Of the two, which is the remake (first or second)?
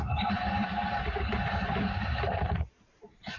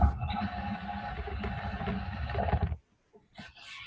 first